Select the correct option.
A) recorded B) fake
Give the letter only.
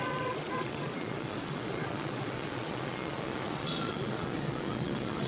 B